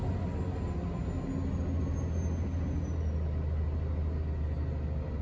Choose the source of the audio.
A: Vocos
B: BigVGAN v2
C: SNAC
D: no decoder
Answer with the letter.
D